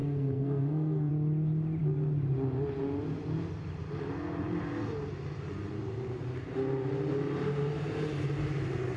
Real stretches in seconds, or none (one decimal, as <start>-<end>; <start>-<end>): 1.1-9.0